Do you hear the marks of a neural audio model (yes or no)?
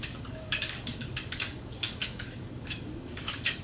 yes